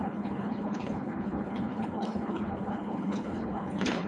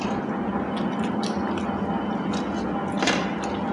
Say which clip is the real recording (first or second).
second